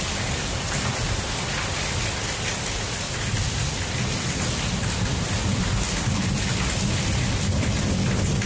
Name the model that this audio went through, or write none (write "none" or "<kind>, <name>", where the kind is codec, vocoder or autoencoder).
none